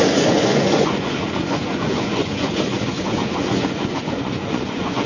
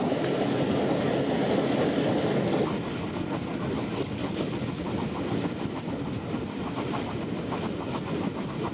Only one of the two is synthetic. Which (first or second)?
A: first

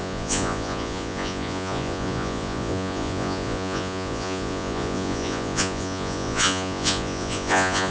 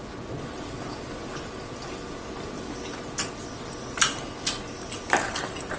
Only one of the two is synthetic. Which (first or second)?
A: first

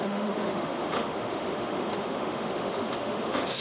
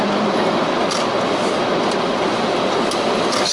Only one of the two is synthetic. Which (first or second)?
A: first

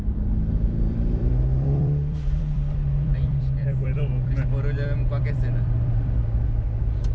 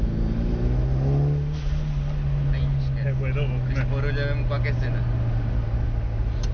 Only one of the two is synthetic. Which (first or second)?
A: first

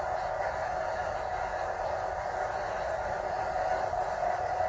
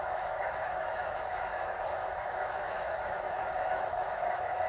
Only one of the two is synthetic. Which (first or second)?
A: second